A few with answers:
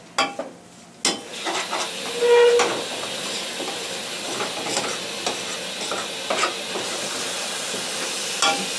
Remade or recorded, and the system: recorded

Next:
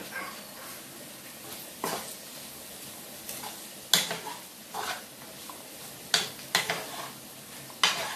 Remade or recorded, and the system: recorded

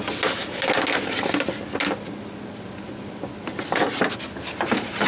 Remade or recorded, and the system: recorded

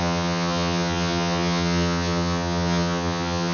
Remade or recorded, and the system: remade, vocoder, HiFi-GAN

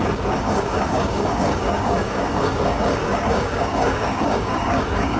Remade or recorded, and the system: remade, codec, DAC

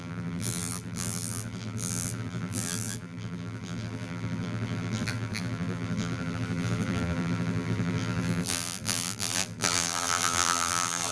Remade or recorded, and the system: remade, vocoder, BigVGAN v2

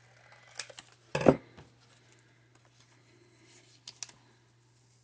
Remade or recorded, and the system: recorded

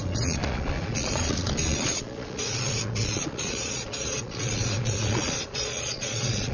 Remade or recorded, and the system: remade, vocoder, Vocos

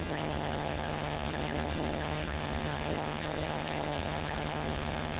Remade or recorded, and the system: remade, vocoder, HiFi-GAN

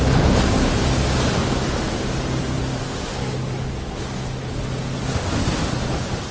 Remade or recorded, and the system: recorded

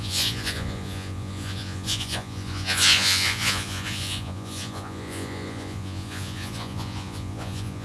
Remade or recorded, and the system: remade, vocoder, Vocos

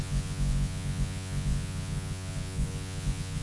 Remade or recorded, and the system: remade, vocoder, Vocos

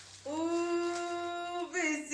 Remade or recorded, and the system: recorded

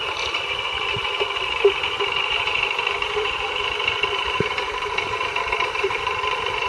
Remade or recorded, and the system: remade, vocoder, BigVGAN v2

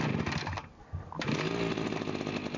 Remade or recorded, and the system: recorded